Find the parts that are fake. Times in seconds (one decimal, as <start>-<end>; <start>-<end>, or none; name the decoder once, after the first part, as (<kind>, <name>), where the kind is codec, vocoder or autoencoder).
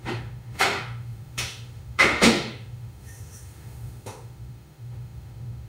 0.0-5.7 (autoencoder, DAC-VAE)